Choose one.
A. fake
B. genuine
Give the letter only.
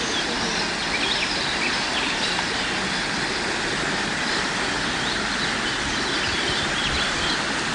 B